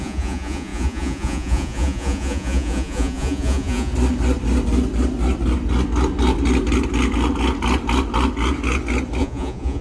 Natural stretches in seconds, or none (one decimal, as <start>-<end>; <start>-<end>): 3.9-9.2

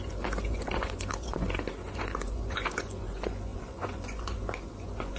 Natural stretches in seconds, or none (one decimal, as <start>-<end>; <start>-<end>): none

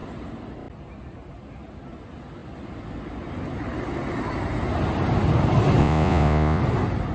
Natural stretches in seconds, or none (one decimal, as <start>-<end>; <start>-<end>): 0.0-5.8; 6.6-7.1